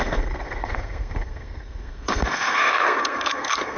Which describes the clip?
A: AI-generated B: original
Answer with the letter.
A